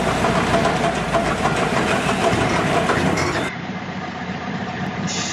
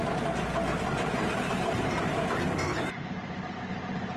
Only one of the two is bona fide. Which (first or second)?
second